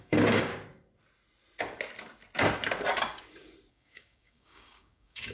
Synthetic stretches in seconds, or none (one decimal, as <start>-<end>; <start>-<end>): 0.0-0.5; 3.7-5.3

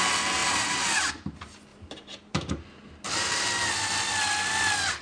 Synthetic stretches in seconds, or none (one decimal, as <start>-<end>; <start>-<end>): 0.4-1.1; 1.7-2.5

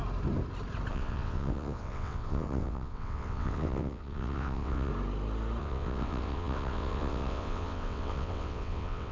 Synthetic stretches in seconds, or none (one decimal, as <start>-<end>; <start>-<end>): 0.9-4.9; 5.6-9.1

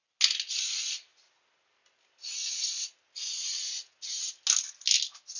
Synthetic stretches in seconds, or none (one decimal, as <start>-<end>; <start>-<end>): none

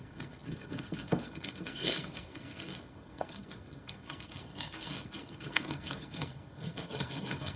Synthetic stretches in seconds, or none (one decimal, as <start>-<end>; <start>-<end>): 0.0-7.6